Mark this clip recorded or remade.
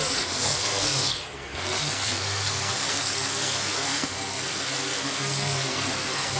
remade